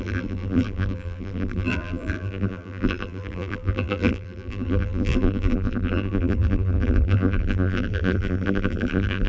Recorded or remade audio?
remade